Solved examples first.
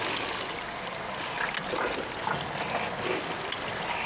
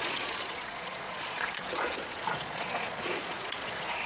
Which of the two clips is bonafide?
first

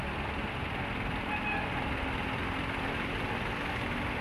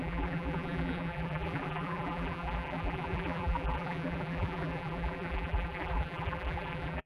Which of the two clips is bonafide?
first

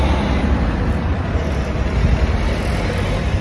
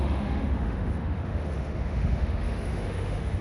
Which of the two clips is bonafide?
first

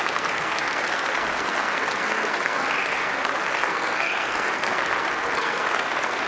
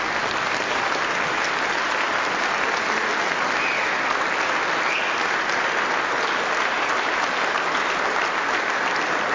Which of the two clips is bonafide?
second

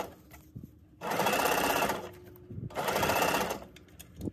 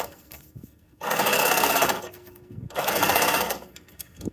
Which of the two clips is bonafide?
first